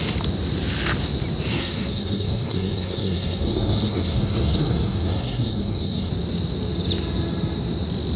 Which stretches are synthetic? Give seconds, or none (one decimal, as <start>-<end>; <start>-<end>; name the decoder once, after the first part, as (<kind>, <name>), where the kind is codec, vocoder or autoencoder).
1.5-6.1 (codec, SNAC)

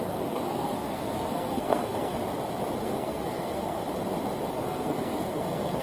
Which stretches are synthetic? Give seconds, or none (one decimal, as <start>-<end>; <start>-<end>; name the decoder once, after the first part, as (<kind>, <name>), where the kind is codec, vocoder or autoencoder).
0.0-2.2 (codec, SNAC); 2.8-3.8; 4.5-5.8

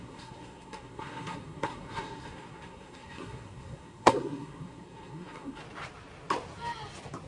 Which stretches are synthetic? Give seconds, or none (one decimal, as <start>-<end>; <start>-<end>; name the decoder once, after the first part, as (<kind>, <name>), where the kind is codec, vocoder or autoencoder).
0.0-5.6 (codec, SNAC)

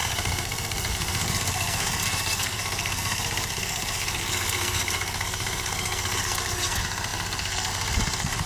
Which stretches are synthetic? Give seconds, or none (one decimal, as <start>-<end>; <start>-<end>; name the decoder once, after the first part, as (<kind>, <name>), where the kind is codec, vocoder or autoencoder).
0.0-8.5 (codec, SNAC)